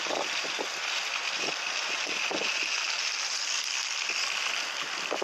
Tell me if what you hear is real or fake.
real